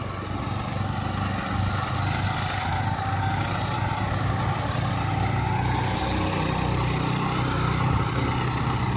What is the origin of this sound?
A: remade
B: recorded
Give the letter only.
B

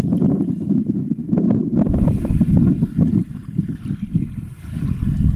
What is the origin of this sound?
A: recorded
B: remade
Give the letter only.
B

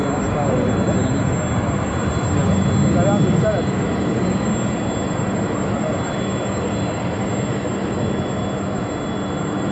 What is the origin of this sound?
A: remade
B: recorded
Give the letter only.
B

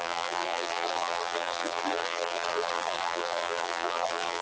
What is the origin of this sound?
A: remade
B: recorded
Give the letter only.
A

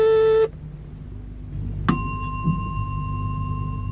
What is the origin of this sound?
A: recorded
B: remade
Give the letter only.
A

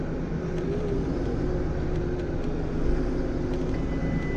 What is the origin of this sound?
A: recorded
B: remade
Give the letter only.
A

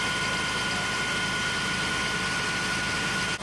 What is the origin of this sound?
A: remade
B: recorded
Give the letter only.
B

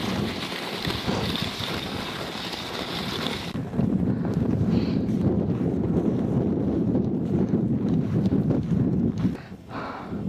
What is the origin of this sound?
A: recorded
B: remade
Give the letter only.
B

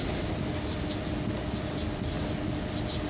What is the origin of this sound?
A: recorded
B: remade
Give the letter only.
A